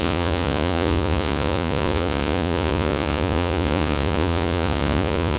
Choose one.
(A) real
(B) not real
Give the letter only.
B